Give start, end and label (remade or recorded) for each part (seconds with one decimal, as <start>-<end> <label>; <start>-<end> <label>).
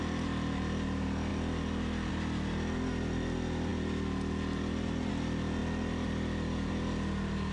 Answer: 0.0-7.5 recorded